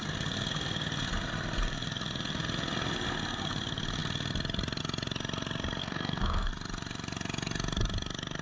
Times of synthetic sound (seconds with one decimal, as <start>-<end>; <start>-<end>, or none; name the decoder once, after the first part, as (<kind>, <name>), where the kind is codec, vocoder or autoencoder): 5.8-6.5 (codec, SNAC)